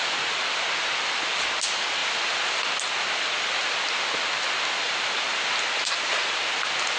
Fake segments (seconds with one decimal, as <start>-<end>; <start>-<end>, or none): none